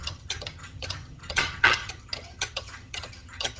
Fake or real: fake